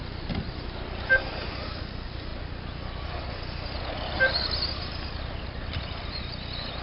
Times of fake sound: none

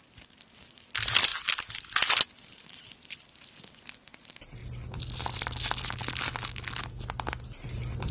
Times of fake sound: none

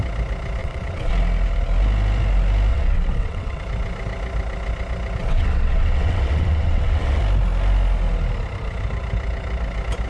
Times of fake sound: 0.6-1.1 (vocoder, WaveNeXt); 2.7-3.6; 5.2-7.2

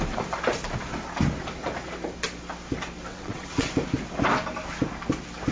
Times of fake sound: 3.1-3.7 (vocoder, WaveNeXt)

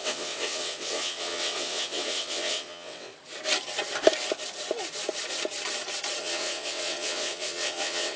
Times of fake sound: 0.0-3.1 (vocoder, WaveNeXt); 6.2-8.2

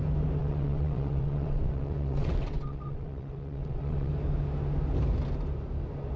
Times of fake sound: 0.4-4.1 (vocoder, WaveNeXt)

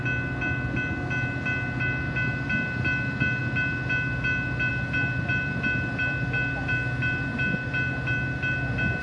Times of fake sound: none